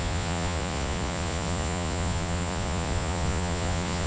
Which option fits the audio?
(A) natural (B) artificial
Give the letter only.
B